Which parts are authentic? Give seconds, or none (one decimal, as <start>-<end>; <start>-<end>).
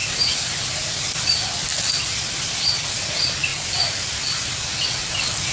0.7-3.5; 5.1-5.5